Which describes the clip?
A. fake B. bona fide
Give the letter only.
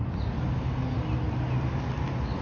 B